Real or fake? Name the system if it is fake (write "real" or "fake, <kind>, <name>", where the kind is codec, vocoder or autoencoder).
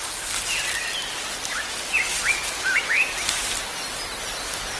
real